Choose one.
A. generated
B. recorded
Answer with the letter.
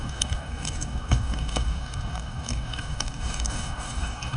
A